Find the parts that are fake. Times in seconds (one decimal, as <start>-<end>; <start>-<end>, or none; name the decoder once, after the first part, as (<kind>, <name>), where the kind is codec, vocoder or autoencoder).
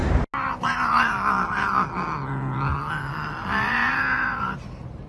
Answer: none